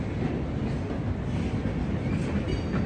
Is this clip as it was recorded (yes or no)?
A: yes